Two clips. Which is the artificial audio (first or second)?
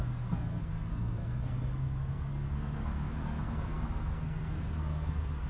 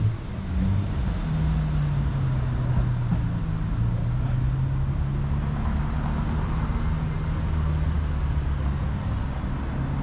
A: first